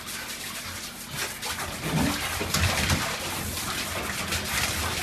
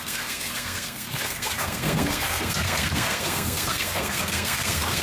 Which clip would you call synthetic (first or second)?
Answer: second